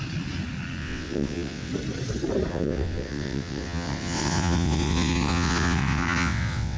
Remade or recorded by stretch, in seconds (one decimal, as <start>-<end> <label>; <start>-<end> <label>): 0.0-0.8 recorded; 0.8-1.7 remade; 1.7-2.5 recorded; 2.5-6.8 remade